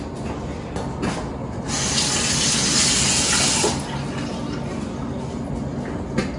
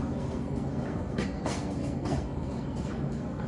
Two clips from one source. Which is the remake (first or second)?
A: second